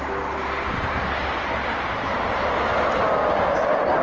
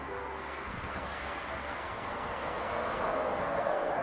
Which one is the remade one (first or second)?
second